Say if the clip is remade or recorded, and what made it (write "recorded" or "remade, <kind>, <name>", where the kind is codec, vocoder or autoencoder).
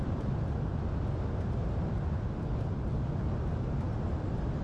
remade, vocoder, BigVGAN v2